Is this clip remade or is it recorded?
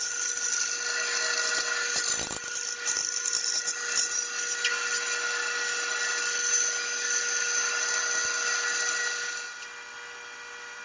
recorded